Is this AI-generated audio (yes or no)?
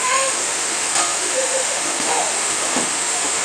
yes